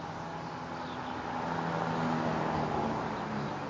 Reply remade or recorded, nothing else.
recorded